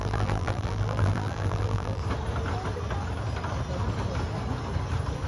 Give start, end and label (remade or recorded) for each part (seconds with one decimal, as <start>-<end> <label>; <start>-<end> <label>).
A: 0.0-2.0 remade; 2.0-5.3 recorded